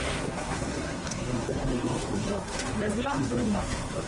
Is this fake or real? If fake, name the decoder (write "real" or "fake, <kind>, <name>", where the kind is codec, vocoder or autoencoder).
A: fake, codec, SNAC